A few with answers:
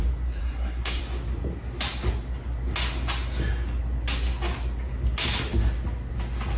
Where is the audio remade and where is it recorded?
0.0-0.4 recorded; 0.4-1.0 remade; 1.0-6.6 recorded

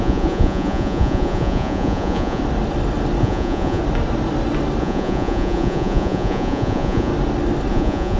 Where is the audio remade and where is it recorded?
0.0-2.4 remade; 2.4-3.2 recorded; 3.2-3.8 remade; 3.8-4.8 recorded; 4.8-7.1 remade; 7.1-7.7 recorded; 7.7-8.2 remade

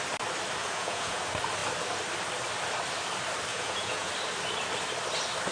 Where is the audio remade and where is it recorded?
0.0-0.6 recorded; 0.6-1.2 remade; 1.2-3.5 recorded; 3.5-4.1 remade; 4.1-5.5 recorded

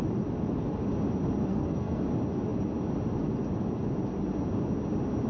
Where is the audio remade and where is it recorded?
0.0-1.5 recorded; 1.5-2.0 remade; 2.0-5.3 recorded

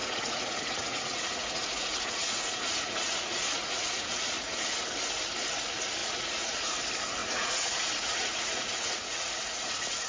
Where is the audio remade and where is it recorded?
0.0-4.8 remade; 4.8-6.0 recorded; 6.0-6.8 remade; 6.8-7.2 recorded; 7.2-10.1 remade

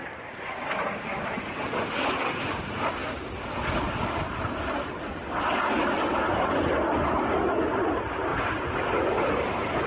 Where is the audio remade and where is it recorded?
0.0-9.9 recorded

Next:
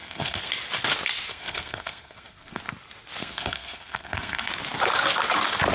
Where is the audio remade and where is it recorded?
0.0-0.5 remade; 0.5-1.3 recorded; 1.3-2.6 remade; 2.6-3.2 recorded; 3.2-4.5 remade; 4.5-5.7 recorded

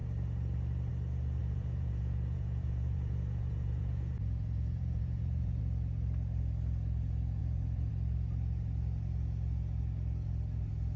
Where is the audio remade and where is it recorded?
0.0-1.4 recorded; 1.4-5.6 remade; 5.6-7.4 recorded; 7.4-7.9 remade; 7.9-11.0 recorded